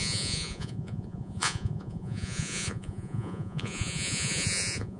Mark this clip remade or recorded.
remade